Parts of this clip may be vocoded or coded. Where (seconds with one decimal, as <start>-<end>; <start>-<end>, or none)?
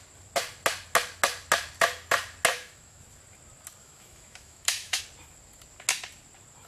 2.5-3.0; 3.8-5.0